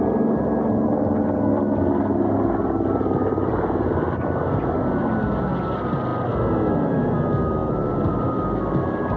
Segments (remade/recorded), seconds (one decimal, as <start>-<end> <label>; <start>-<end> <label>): 0.0-9.2 recorded